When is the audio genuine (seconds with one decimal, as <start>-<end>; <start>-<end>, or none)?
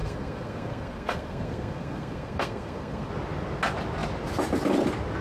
3.1-5.2